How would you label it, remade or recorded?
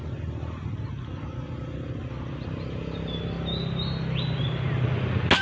recorded